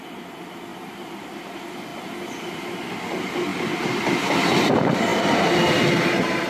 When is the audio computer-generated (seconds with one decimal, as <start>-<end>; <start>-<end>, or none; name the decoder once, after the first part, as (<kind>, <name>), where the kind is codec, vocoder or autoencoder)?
0.7-1.2 (vocoder, BigVGAN v2); 3.5-4.4